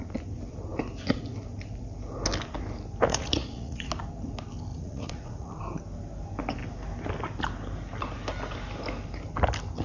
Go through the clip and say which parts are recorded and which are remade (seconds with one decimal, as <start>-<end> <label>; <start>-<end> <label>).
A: 0.0-3.1 recorded; 3.1-3.9 remade; 3.9-4.7 recorded; 4.7-5.6 remade; 5.6-9.8 recorded